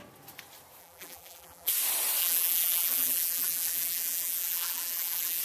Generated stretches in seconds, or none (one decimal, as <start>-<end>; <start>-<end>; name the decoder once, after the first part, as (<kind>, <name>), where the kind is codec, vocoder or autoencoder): 0.8-1.7 (vocoder, BigVGAN v2); 2.2-5.4